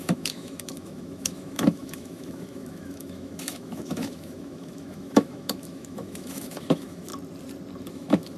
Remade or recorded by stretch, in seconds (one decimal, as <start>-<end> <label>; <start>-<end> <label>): 0.0-7.1 remade; 7.1-7.9 recorded; 7.9-8.4 remade

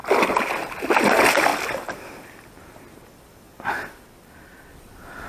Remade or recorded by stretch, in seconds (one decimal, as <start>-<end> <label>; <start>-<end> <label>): 0.0-1.5 remade; 1.5-4.7 recorded; 4.7-5.3 remade